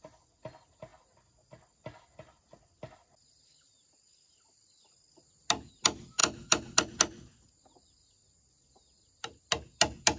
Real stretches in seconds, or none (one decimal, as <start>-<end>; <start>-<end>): 0.0-10.2